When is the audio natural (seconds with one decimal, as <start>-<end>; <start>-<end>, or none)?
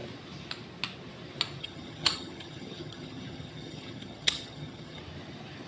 0.0-1.6; 5.0-5.7